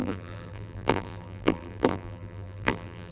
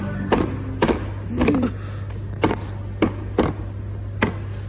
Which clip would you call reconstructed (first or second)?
first